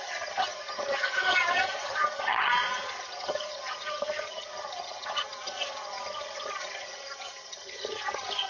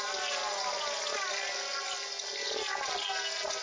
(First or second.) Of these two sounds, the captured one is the second